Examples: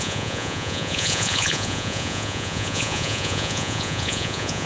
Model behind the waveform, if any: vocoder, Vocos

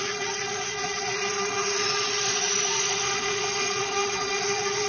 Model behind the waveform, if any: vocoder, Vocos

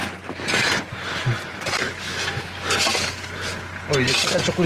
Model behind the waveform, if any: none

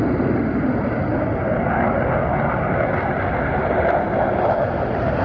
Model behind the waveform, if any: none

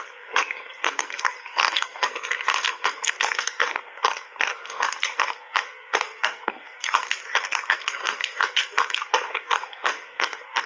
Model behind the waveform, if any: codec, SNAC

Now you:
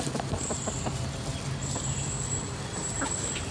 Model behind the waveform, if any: none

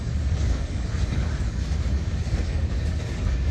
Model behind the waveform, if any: codec, DAC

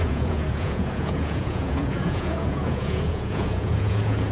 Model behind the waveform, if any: vocoder, Vocos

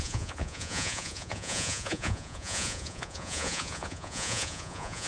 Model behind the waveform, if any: vocoder, Vocos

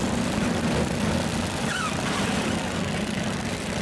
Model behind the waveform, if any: vocoder, BigVGAN v2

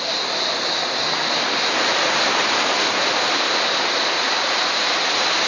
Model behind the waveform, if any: none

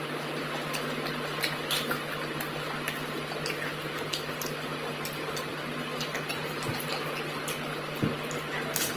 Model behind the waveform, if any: none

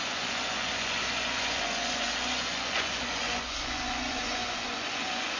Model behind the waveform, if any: vocoder, Vocos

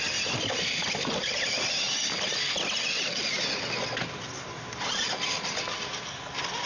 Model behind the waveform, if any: none